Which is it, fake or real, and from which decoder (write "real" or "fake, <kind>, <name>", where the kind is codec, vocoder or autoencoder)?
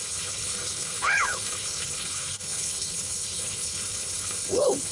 fake, codec, HILCodec